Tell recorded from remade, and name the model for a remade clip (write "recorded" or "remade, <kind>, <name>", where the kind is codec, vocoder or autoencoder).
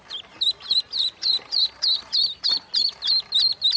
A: recorded